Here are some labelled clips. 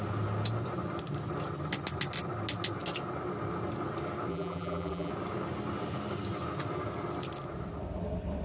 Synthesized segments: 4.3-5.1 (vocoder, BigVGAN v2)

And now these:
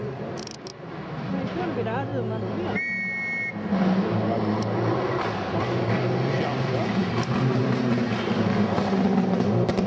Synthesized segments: 0.0-0.5 (vocoder, BigVGAN v2)

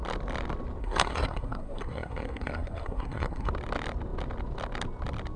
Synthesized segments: 0.8-3.5 (codec, SNAC)

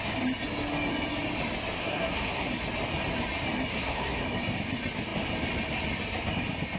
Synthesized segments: 1.8-2.5 (codec, SNAC); 3.7-4.2

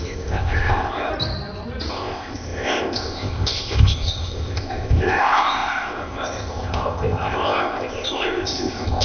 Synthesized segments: 0.0-1.1 (codec, ZipCodec); 1.9-9.0